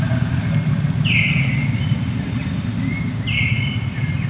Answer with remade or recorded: recorded